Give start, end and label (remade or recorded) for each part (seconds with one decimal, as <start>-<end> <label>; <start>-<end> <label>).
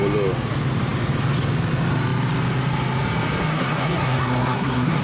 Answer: 0.0-3.4 recorded; 3.4-5.0 remade